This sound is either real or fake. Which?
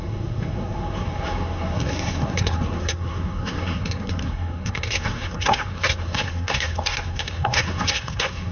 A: fake